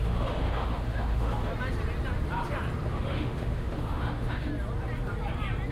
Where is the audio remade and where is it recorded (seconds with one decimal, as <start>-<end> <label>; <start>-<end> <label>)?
0.0-1.5 remade; 1.5-2.9 recorded; 2.9-4.5 remade; 4.5-5.7 recorded